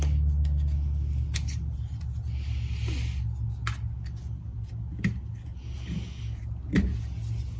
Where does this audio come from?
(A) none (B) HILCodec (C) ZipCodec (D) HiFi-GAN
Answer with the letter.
A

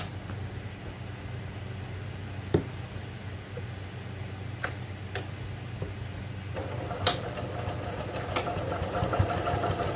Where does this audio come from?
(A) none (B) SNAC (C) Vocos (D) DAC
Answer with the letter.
A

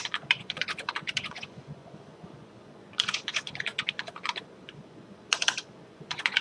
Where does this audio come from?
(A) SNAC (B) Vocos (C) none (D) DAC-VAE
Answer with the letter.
B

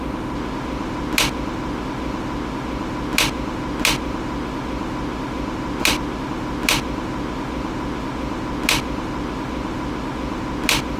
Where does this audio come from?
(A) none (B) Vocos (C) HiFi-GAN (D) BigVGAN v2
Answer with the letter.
A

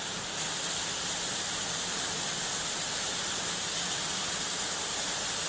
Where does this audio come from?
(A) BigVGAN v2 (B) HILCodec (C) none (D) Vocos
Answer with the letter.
C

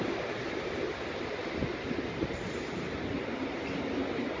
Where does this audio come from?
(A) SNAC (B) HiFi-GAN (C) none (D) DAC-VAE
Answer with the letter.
C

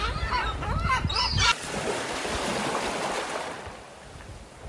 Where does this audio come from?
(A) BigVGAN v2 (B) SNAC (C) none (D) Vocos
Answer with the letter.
A